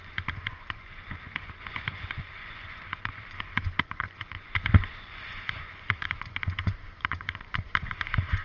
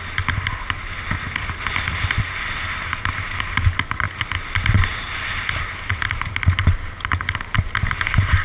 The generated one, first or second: first